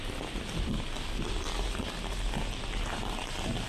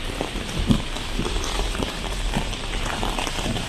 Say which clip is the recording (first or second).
first